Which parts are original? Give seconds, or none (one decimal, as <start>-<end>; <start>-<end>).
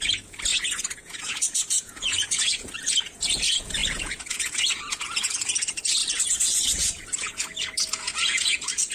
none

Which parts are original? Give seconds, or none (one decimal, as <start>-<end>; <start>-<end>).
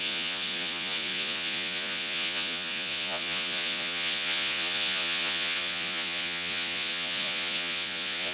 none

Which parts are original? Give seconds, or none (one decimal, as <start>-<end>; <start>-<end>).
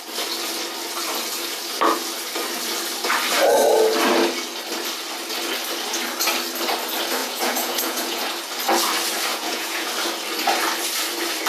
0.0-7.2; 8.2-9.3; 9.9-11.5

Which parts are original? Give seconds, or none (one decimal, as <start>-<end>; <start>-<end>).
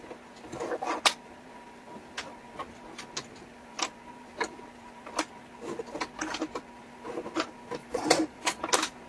0.0-7.8; 8.6-9.1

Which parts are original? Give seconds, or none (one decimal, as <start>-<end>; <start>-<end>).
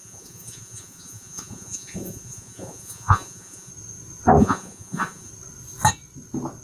3.7-4.4; 5.3-6.6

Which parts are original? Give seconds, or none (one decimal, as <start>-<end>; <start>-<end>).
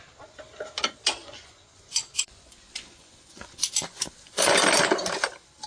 0.0-1.2; 4.6-5.7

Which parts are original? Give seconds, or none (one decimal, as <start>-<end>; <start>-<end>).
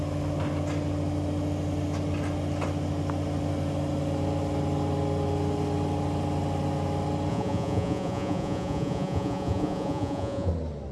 0.0-7.3; 10.5-10.9